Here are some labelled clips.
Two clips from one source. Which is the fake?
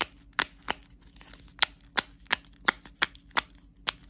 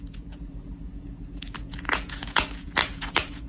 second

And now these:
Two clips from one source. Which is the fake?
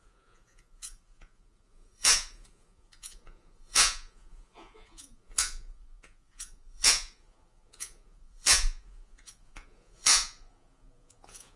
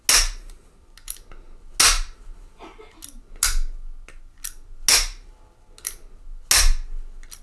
first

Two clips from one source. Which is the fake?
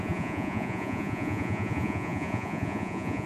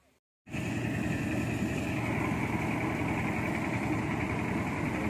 first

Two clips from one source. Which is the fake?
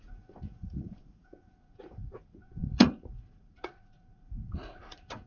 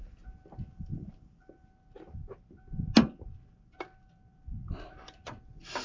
first